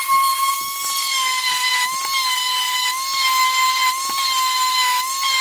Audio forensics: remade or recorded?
recorded